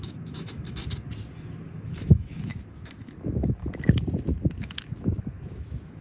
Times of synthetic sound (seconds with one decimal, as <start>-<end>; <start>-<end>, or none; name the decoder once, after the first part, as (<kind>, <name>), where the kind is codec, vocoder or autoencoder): 0.0-0.8 (autoencoder, DAC-VAE); 1.7-3.6; 4.6-6.0